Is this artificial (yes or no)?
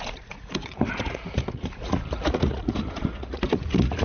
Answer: yes